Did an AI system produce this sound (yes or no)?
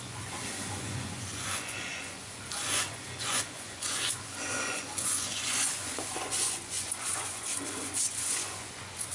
yes